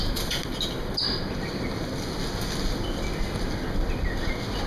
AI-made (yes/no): no